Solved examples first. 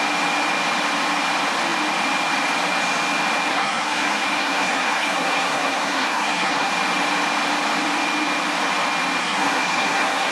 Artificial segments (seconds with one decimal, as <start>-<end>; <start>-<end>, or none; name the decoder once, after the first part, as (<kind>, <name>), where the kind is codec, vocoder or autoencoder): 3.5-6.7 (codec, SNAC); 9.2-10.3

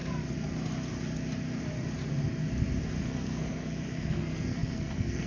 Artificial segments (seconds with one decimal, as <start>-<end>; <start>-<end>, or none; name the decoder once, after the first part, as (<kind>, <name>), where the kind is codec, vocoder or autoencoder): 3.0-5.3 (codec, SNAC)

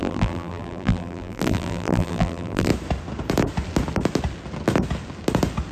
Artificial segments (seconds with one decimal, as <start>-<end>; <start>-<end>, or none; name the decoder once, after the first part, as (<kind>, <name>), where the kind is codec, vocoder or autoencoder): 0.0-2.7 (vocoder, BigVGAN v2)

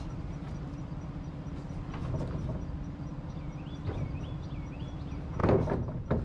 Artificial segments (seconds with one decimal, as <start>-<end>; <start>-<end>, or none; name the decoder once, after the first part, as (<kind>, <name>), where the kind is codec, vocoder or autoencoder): none